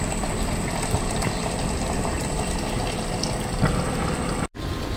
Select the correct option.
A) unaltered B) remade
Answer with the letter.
A